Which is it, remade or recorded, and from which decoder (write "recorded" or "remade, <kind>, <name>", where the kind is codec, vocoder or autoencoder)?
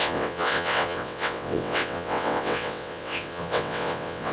remade, vocoder, WaveNeXt